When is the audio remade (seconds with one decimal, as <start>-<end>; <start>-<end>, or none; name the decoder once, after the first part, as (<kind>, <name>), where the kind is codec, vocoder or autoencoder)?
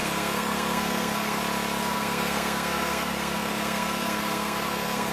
0.0-1.4 (codec, SNAC); 1.8-5.1